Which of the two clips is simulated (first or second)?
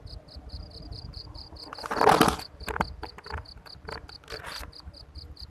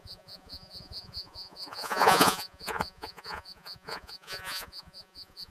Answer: second